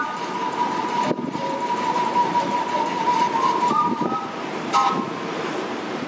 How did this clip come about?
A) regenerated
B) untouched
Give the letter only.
A